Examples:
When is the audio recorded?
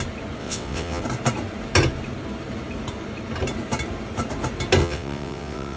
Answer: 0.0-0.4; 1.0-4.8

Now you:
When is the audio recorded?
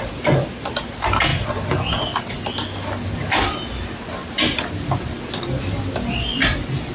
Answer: 0.0-6.9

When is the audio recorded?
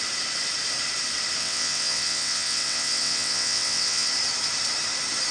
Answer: 0.0-1.4; 4.1-5.3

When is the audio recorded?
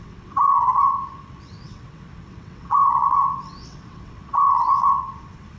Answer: none